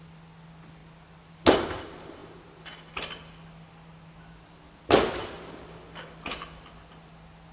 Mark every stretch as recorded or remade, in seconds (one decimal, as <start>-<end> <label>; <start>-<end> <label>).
0.0-7.5 recorded